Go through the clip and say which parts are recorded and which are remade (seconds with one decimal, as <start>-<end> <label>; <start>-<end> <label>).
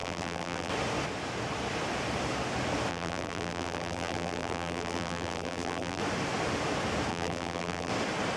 0.0-0.7 remade; 0.7-2.9 recorded; 2.9-6.0 remade; 6.0-7.1 recorded; 7.1-7.9 remade; 7.9-8.4 recorded